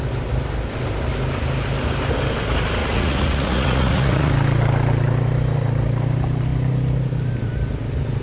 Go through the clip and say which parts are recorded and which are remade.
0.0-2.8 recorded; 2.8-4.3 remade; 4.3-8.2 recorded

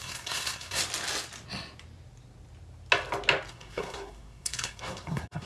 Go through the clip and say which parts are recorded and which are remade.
0.0-0.8 remade; 0.8-3.5 recorded; 3.5-5.5 remade